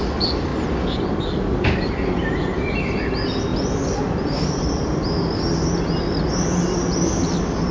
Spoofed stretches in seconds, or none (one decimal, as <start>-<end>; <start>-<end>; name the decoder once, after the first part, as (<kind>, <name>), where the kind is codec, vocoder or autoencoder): none